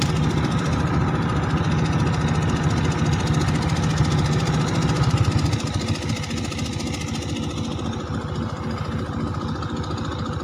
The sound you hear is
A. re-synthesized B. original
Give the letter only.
B